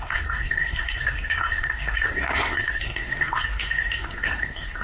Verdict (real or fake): fake